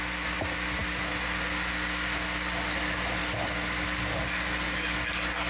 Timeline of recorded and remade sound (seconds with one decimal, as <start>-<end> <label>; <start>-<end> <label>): 0.0-5.5 recorded